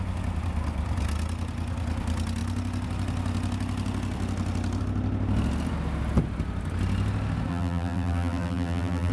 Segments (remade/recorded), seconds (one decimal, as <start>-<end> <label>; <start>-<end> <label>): 0.0-7.5 recorded; 7.5-9.1 remade